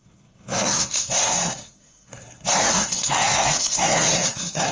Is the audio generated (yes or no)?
yes